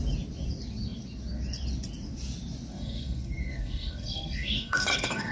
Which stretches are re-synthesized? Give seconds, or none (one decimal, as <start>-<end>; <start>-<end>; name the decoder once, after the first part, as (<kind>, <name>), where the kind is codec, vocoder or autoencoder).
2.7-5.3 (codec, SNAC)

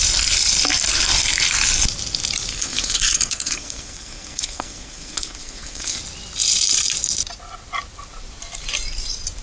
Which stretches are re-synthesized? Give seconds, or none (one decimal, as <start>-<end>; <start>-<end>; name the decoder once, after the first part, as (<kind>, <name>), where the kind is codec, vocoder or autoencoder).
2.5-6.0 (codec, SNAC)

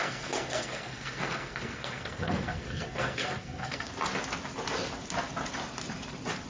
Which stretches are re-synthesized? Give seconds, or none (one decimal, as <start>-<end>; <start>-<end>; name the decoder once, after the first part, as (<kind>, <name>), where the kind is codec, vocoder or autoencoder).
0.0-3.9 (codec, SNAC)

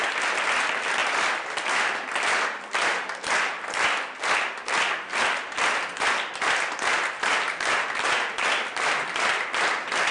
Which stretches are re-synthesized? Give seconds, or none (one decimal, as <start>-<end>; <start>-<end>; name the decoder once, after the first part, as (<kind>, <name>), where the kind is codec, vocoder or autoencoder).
none

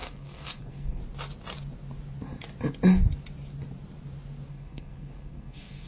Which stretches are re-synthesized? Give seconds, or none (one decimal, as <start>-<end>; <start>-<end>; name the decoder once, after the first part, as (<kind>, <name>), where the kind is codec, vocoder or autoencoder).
0.0-1.0 (codec, SNAC); 4.5-5.9

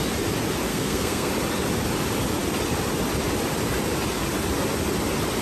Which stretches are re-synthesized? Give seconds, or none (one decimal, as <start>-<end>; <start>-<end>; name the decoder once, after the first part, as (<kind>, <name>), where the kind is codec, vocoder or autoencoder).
0.7-1.3 (codec, SNAC)

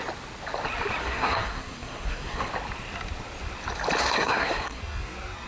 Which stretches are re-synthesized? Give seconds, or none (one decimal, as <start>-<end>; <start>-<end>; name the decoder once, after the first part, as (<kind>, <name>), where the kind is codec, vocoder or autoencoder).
1.0-2.5 (codec, SNAC); 4.0-4.8

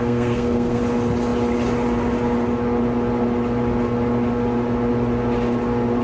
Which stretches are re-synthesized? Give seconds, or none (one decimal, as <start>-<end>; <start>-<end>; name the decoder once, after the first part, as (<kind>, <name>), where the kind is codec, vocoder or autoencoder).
0.0-0.8 (codec, SNAC)